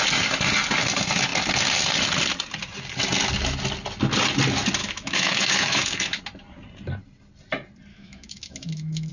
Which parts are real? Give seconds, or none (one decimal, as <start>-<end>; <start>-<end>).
0.0-4.8; 6.2-7.9